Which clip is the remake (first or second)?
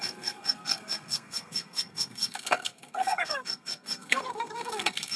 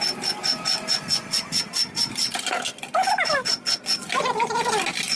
first